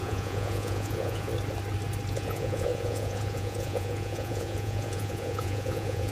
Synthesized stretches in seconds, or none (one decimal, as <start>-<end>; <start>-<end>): 0.0-1.3; 2.1-6.1